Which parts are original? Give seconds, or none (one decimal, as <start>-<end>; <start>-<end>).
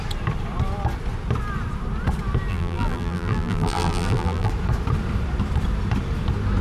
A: 0.0-2.5; 4.5-6.6